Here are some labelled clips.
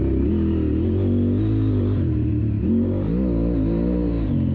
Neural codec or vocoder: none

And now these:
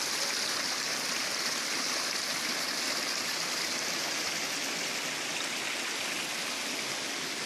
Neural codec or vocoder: none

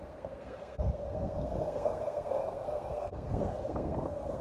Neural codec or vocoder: codec, SNAC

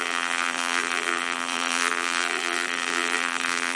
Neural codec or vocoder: vocoder, BigVGAN v2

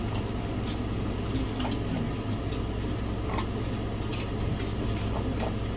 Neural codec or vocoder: none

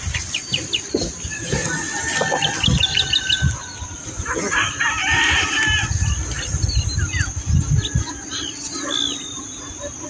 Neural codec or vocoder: none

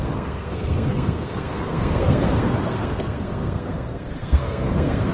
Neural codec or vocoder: codec, SNAC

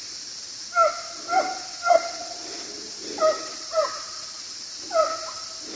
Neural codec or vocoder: none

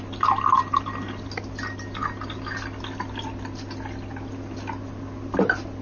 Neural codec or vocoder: none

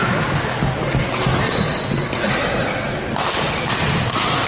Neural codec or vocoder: none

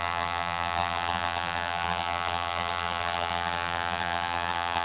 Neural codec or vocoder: vocoder, BigVGAN v2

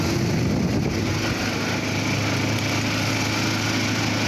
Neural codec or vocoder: none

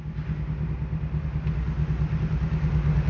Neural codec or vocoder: none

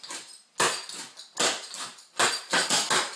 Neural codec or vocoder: none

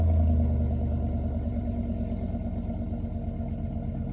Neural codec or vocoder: none